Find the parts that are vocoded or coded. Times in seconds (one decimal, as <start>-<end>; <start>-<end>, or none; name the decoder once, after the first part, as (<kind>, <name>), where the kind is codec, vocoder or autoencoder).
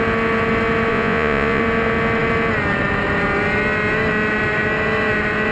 0.9-1.6 (vocoder, Vocos)